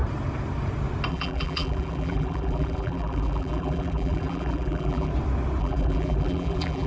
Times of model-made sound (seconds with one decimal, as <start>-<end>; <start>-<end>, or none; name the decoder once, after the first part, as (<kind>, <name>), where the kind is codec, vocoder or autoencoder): 1.1-5.1 (vocoder, BigVGAN v2); 5.6-6.9